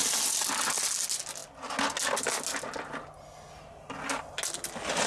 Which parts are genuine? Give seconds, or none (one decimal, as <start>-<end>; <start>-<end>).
0.0-5.1